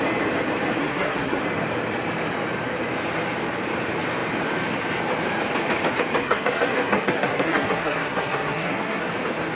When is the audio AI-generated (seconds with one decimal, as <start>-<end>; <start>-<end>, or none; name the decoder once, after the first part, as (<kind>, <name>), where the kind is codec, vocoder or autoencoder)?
0.8-1.4 (codec, SNAC); 6.2-9.0